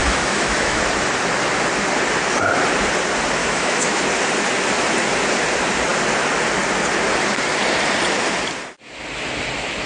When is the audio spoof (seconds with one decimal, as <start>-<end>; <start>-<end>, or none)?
0.0-0.8; 3.4-4.0